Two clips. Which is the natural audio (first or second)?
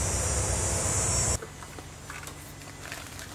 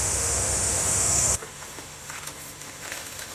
first